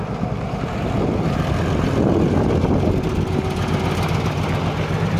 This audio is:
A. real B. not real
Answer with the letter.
A